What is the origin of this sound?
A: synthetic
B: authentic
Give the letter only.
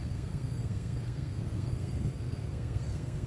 A